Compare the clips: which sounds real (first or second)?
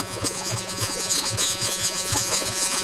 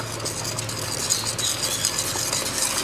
second